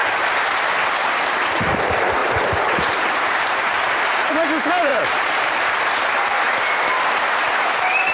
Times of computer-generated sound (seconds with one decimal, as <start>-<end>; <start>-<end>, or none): 2.2-4.3; 4.9-5.7